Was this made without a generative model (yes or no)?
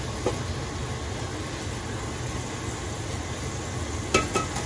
yes